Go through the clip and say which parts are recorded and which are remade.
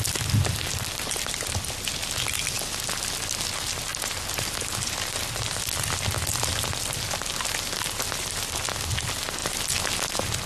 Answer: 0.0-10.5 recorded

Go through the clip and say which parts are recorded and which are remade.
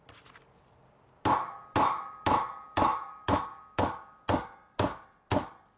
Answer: 0.0-5.8 recorded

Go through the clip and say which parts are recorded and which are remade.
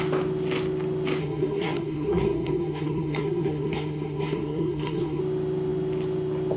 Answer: 0.0-1.2 recorded; 1.2-5.2 remade; 5.2-6.6 recorded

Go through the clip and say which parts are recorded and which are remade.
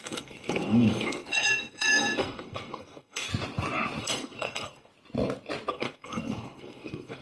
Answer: 0.0-3.3 remade; 3.3-4.0 recorded; 4.0-4.9 remade; 4.9-5.7 recorded; 5.7-7.2 remade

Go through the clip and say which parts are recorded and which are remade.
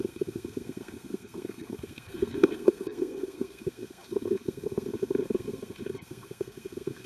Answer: 0.0-7.1 remade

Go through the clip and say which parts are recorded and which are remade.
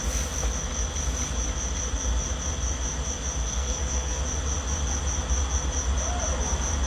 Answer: 0.0-3.4 recorded; 3.4-4.2 remade; 4.2-6.9 recorded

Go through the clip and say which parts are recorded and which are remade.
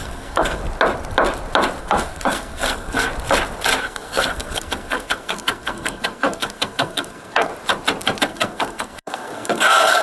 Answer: 0.0-0.6 remade; 0.6-1.8 recorded; 1.8-3.1 remade; 3.1-3.8 recorded; 3.8-7.5 remade; 7.5-8.2 recorded; 8.2-10.0 remade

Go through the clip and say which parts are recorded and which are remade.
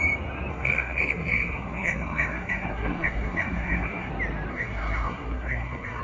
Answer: 0.0-0.5 recorded; 0.5-4.1 remade; 4.1-4.5 recorded; 4.5-6.0 remade